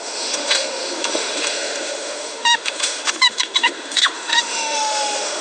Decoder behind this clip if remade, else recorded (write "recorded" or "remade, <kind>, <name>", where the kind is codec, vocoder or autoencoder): remade, autoencoder, DAC-VAE